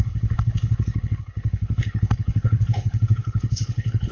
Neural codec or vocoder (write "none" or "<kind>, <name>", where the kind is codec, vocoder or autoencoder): codec, HILCodec